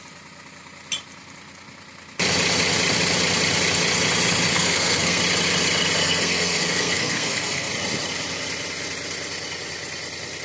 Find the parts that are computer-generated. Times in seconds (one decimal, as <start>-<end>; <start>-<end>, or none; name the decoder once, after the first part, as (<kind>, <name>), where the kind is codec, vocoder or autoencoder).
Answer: 4.5-5.2 (codec, SNAC); 6.0-7.7